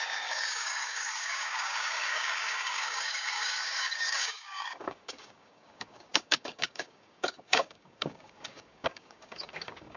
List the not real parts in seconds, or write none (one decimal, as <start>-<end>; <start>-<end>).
0.0-10.0